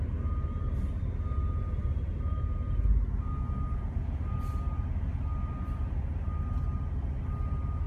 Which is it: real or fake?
real